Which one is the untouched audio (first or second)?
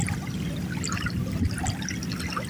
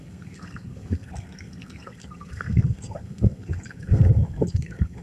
first